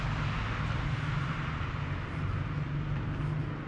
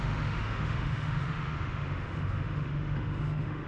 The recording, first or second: first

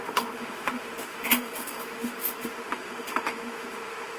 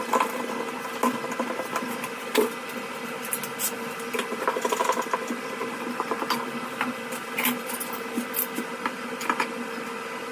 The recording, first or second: second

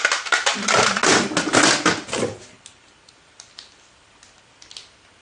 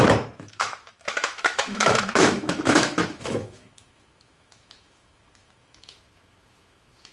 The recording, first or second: first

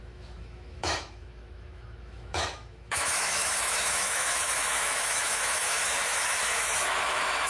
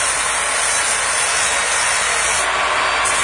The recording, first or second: second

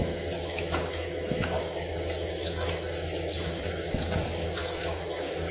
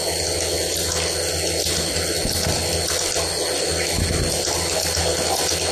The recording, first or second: second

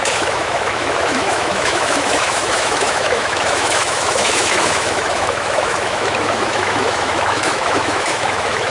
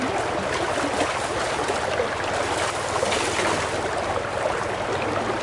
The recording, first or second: second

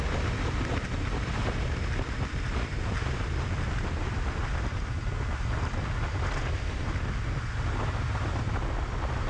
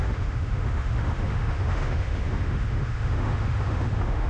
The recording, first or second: first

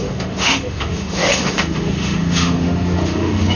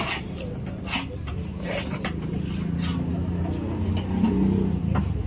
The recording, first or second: second